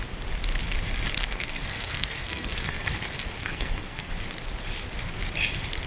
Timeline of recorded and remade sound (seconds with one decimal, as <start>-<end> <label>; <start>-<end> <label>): 0.0-1.2 recorded; 1.2-2.9 remade; 2.9-3.4 recorded; 3.4-4.1 remade; 4.1-5.9 recorded

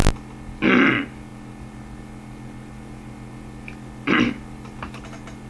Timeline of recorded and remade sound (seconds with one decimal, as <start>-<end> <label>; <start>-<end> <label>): 0.0-5.5 recorded

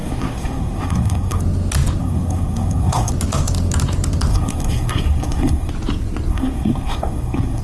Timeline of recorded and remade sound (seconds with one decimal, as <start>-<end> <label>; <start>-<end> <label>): 0.0-1.4 remade; 1.4-2.0 recorded; 2.0-3.1 remade; 3.1-4.3 recorded; 4.3-5.7 remade; 5.7-6.3 recorded; 6.3-7.6 remade

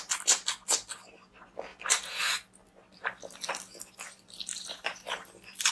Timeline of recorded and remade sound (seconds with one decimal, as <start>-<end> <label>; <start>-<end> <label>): 0.0-5.7 recorded

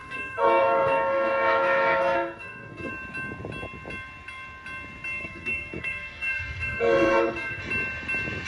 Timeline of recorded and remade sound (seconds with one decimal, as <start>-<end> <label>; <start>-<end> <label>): 0.0-2.9 remade; 2.9-5.2 recorded; 5.2-7.6 remade; 7.6-8.5 recorded

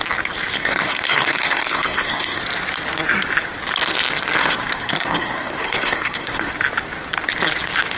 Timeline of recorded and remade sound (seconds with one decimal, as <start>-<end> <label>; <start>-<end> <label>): 0.0-0.6 recorded; 0.6-2.4 remade; 2.4-4.4 recorded; 4.4-6.5 remade; 6.5-8.0 recorded

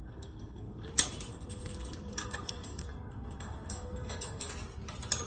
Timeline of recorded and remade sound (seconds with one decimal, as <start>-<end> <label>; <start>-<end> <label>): 0.0-0.9 remade; 0.9-1.3 recorded; 1.3-4.5 remade; 4.5-5.3 recorded